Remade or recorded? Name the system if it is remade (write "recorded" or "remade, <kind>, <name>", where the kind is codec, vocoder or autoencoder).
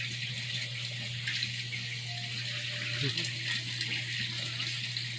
recorded